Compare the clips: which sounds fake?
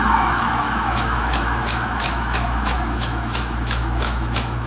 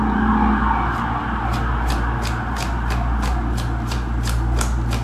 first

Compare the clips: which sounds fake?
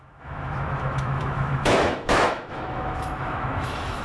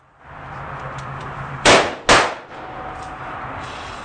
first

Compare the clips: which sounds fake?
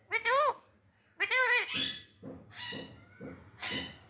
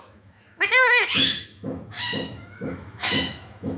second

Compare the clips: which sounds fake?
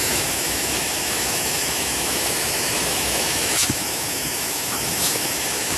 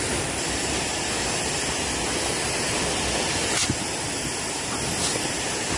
first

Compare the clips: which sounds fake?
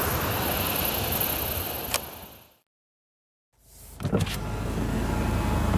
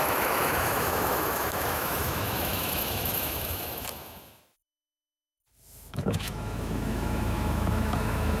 second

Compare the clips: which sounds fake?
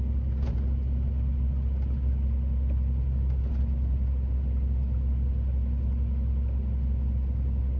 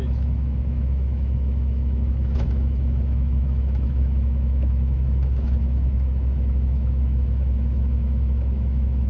second